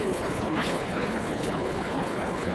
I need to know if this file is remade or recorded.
remade